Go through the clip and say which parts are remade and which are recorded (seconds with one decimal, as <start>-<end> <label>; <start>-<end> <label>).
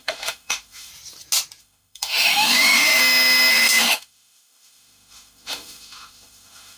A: 0.0-0.9 remade; 0.9-1.6 recorded; 1.6-3.0 remade; 3.0-3.5 recorded; 3.5-6.8 remade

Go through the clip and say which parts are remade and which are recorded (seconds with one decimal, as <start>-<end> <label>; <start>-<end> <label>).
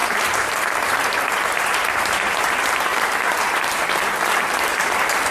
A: 0.0-2.5 remade; 2.5-2.9 recorded; 2.9-5.3 remade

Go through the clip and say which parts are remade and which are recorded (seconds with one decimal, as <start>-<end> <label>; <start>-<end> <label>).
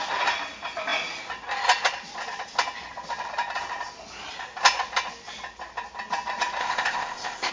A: 0.0-6.6 recorded; 6.6-7.5 remade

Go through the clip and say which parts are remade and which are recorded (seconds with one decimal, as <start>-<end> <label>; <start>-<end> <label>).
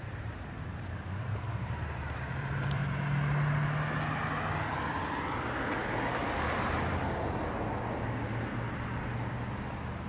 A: 0.0-2.8 remade; 2.8-5.8 recorded; 5.8-6.2 remade; 6.2-10.1 recorded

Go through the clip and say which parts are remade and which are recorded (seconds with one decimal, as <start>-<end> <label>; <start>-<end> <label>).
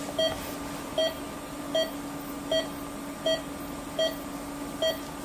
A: 0.0-5.2 recorded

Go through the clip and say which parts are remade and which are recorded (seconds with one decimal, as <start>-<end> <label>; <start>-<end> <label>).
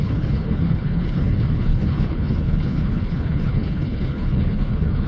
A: 0.0-5.1 remade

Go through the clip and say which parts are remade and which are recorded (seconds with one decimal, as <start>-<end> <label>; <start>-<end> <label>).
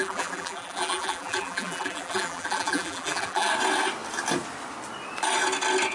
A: 0.0-3.5 remade; 3.5-5.9 recorded